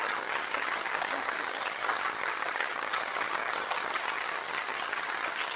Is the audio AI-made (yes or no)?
yes